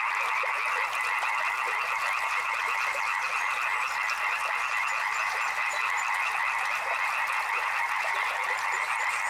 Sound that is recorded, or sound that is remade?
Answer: recorded